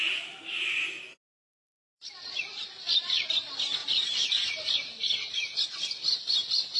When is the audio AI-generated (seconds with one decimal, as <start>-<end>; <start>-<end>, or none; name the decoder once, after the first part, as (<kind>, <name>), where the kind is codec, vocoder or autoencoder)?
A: none